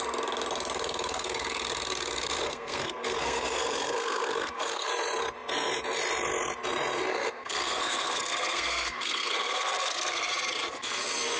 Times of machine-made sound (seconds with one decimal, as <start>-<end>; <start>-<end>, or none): 2.4-4.9; 7.1-10.3